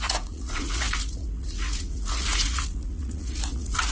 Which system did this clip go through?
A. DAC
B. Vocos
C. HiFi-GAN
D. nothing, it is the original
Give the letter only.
B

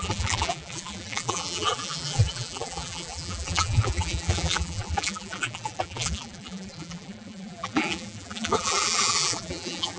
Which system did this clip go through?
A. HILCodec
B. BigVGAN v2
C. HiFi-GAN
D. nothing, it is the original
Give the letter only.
B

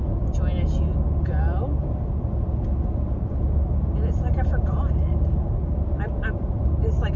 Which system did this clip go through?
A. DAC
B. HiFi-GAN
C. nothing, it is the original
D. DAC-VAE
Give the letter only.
C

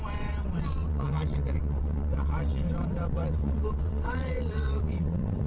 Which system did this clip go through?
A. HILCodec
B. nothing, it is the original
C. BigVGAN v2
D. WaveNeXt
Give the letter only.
D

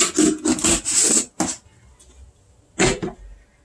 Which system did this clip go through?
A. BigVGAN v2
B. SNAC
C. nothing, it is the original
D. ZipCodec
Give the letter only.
C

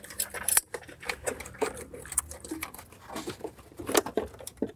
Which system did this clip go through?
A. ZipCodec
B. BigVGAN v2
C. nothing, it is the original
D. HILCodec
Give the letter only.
B